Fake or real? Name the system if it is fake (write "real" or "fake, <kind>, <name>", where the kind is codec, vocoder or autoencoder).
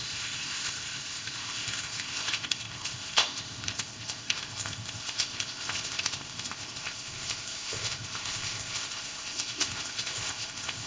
fake, codec, ZipCodec